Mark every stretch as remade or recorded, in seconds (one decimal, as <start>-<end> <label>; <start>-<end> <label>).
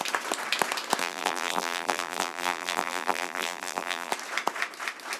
0.0-1.0 recorded; 1.0-4.1 remade; 4.1-5.2 recorded